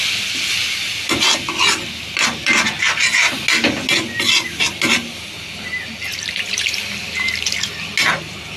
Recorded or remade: recorded